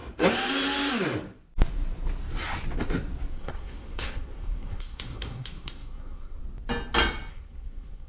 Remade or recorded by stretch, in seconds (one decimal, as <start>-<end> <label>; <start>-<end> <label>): 0.0-3.3 recorded; 3.3-6.4 remade; 6.4-7.3 recorded; 7.3-8.1 remade